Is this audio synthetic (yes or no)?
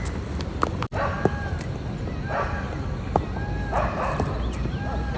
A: no